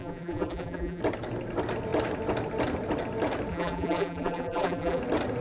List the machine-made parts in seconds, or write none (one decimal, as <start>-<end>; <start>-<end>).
0.0-1.0; 3.5-5.0